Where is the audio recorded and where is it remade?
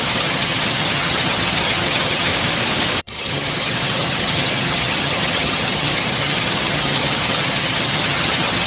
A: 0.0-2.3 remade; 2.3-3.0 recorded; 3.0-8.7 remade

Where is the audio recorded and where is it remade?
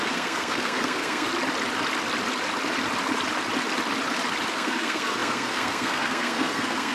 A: 0.0-1.3 remade; 1.3-4.5 recorded; 4.5-6.9 remade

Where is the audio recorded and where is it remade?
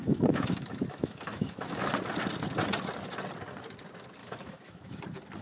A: 0.0-1.9 remade; 1.9-4.2 recorded; 4.2-5.0 remade; 5.0-5.4 recorded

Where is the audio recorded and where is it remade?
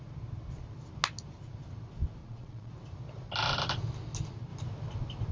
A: 0.0-2.2 recorded; 2.2-2.7 remade; 2.7-5.3 recorded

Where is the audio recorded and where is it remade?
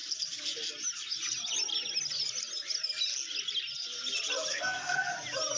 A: 0.0-4.5 recorded; 4.5-5.1 remade; 5.1-5.6 recorded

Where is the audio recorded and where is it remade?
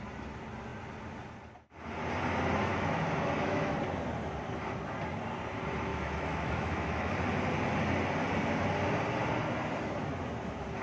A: 0.0-2.7 recorded; 2.7-3.7 remade; 3.7-5.9 recorded; 5.9-7.1 remade; 7.1-10.8 recorded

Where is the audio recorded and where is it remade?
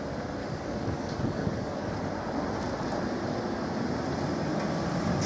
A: 0.0-0.4 recorded; 0.4-1.9 remade; 1.9-5.3 recorded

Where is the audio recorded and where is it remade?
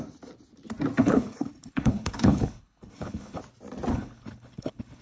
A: 0.0-1.0 recorded; 1.0-3.4 remade; 3.4-3.9 recorded; 3.9-5.0 remade